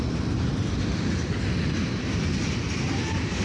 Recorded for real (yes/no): yes